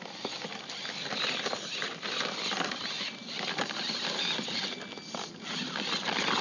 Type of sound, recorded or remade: recorded